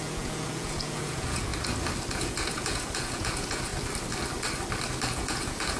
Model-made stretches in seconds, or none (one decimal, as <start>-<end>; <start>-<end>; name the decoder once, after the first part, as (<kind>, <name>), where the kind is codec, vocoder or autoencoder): 0.0-1.5 (vocoder, Vocos); 2.2-3.7; 5.1-5.8